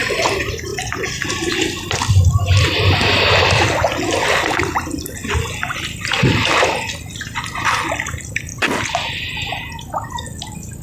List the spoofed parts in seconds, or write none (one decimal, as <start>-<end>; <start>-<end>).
0.7-2.6